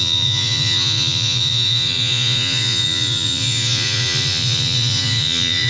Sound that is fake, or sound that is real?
fake